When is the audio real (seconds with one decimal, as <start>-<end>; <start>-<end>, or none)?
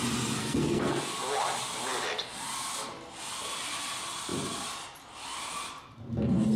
0.0-0.4; 1.0-6.6